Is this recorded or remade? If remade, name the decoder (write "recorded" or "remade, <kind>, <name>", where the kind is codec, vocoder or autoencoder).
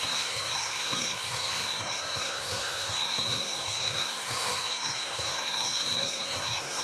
remade, codec, SNAC